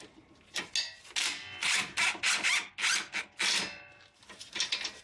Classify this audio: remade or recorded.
recorded